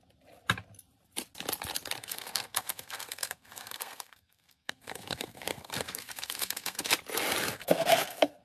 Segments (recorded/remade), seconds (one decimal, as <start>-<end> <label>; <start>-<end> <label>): 0.0-2.0 recorded; 2.0-6.9 remade; 6.9-7.5 recorded; 7.5-8.4 remade